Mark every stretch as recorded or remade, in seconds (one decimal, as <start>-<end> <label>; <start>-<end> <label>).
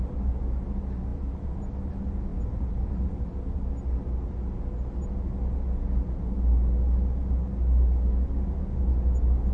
0.0-2.3 recorded; 2.3-3.2 remade; 3.2-9.5 recorded